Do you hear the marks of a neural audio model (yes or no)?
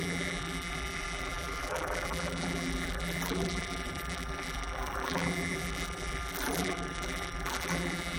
yes